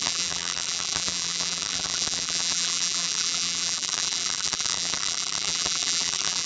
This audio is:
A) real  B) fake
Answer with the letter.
B